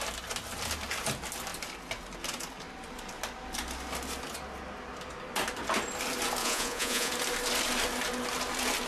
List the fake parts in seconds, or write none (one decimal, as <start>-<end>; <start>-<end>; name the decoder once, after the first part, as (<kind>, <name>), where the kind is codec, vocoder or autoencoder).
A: 6.4-7.1 (vocoder, Vocos)